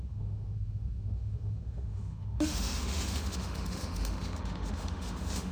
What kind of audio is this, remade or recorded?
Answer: remade